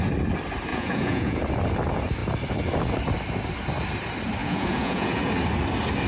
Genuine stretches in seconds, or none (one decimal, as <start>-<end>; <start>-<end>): 0.0-0.7; 1.4-4.4; 5.3-6.1